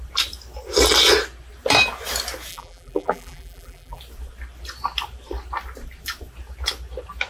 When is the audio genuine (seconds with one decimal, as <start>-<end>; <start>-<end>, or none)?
0.0-2.5; 4.0-7.3